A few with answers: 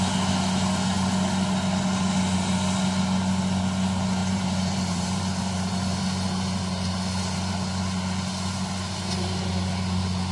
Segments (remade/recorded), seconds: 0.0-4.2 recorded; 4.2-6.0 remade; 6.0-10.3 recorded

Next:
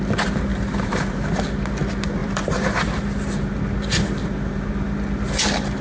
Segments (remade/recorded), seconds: 0.0-0.5 recorded; 0.5-1.4 remade; 1.4-2.2 recorded; 2.2-3.0 remade; 3.0-4.2 recorded; 4.2-4.7 remade; 4.7-5.8 recorded

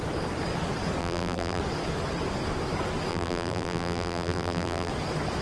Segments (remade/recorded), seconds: 0.0-1.0 recorded; 1.0-1.6 remade; 1.6-3.1 recorded; 3.1-4.9 remade; 4.9-5.4 recorded

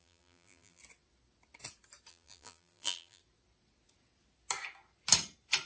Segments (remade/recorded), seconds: 0.0-0.8 remade; 0.8-2.1 recorded; 2.1-3.2 remade; 3.2-5.7 recorded

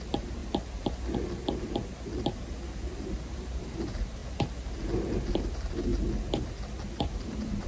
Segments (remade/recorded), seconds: 0.0-0.4 remade; 0.4-3.3 recorded; 3.3-4.2 remade; 4.2-5.3 recorded; 5.3-5.9 remade; 5.9-7.1 recorded; 7.1-7.7 remade